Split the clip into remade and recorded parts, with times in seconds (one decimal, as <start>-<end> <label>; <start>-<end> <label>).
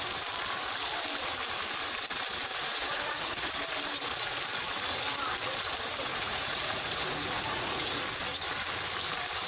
0.0-2.5 recorded; 2.5-3.5 remade; 3.5-6.1 recorded; 6.1-8.0 remade; 8.0-9.5 recorded